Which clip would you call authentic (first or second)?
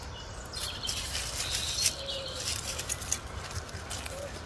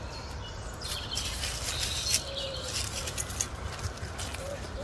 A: second